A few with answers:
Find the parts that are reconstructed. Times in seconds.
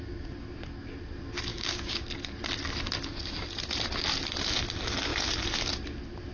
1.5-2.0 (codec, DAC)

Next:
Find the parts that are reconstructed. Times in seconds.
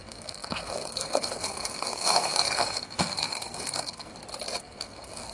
0.0-4.1 (codec, SNAC); 4.6-5.3